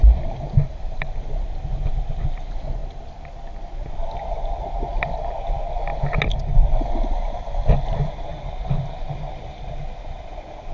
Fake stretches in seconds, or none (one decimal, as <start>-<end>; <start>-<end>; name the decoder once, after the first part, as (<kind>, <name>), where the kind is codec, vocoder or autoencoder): none